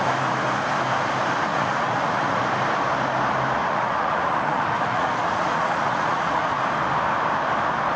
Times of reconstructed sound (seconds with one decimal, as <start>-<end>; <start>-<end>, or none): 1.5-2.4; 3.6-6.6